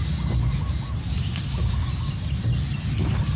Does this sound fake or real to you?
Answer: real